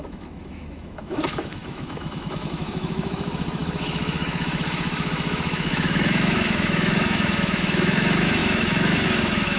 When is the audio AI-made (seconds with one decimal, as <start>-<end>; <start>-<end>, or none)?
0.0-9.6